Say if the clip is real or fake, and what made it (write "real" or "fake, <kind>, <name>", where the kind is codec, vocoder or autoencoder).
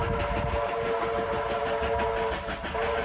real